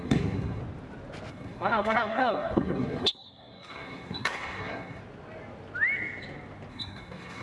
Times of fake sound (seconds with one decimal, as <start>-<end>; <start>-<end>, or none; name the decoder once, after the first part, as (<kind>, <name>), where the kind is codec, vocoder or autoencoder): 0.0-0.6 (codec, SNAC); 1.3-5.0; 6.7-7.4